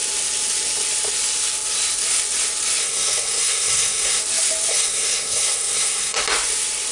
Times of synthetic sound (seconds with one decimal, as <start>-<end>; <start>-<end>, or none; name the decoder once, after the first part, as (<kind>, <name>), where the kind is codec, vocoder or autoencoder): 2.8-4.2 (codec, SNAC); 4.7-6.2